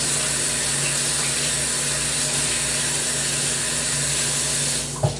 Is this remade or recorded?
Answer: recorded